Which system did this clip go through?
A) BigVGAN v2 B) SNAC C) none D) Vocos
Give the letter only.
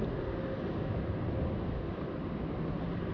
C